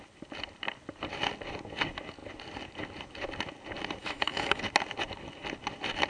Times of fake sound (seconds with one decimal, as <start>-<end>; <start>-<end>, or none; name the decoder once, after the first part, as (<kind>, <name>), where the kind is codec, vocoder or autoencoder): 4.0-4.6 (autoencoder, DAC-VAE)